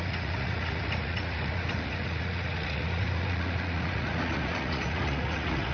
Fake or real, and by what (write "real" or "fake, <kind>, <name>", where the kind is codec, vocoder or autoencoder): fake, vocoder, Vocos